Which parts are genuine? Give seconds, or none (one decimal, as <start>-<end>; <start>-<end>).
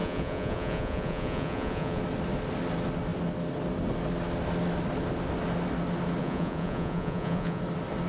2.0-6.2; 7.6-8.1